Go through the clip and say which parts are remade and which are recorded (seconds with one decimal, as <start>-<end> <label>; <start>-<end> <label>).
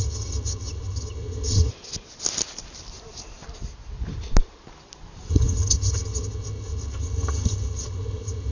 0.0-1.7 remade; 1.7-5.3 recorded; 5.3-8.5 remade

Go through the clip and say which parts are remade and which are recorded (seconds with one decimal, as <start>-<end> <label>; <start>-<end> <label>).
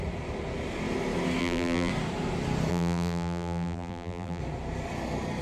0.0-1.4 recorded; 1.4-1.9 remade; 1.9-2.7 recorded; 2.7-4.4 remade; 4.4-5.4 recorded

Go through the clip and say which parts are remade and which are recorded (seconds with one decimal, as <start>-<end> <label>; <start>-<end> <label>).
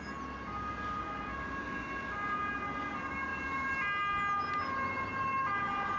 0.0-6.0 recorded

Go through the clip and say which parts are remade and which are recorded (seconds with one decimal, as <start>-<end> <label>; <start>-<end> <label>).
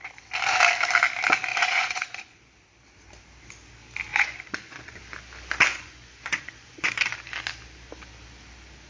0.0-1.5 recorded; 1.5-2.5 remade; 2.5-4.1 recorded; 4.1-5.0 remade; 5.0-5.7 recorded; 5.7-7.0 remade; 7.0-8.9 recorded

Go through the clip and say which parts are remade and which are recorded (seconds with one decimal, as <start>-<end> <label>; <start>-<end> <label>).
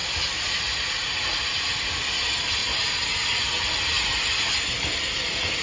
0.0-5.6 recorded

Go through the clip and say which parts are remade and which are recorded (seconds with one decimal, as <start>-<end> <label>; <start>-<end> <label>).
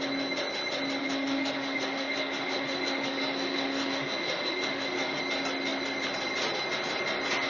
0.0-1.0 recorded; 1.0-5.2 remade; 5.2-7.5 recorded